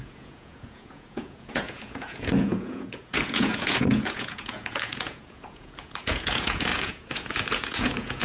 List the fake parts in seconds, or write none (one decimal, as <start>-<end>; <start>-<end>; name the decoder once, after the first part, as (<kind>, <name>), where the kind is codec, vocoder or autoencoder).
0.0-8.2 (vocoder, Vocos)